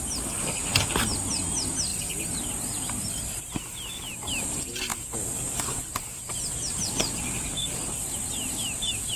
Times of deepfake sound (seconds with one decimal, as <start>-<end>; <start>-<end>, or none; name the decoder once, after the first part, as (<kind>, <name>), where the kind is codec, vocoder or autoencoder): 1.9-3.4 (vocoder, BigVGAN v2); 4.9-6.9